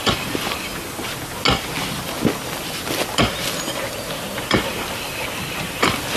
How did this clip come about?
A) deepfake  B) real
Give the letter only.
B